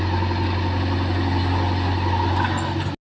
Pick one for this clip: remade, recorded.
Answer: recorded